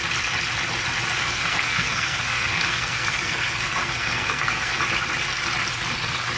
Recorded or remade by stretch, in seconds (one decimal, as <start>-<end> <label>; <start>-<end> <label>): 0.0-1.2 recorded; 1.2-4.8 remade; 4.8-6.4 recorded